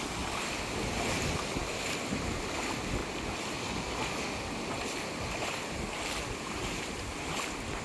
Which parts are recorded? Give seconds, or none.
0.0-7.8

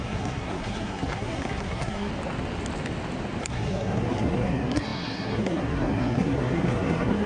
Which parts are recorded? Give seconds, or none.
2.1-3.4

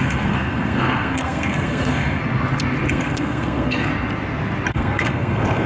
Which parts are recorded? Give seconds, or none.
2.2-2.9; 3.9-4.7